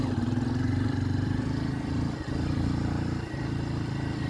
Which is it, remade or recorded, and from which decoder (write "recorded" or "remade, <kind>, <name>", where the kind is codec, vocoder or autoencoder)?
remade, vocoder, BigVGAN v2